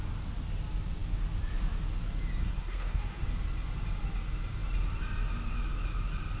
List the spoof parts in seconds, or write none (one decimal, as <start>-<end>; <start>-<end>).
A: 2.4-3.2